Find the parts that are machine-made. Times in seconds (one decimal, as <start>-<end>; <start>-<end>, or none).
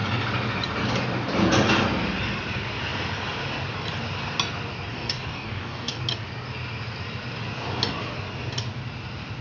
4.9-6.0